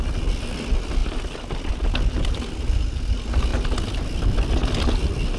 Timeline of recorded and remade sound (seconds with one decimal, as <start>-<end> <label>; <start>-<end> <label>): 0.0-5.4 recorded